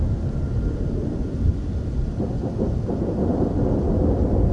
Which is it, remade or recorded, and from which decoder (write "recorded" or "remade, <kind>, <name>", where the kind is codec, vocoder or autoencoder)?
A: recorded